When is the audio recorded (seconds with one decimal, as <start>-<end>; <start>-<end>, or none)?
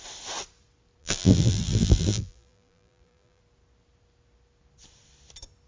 0.0-1.0; 3.4-5.7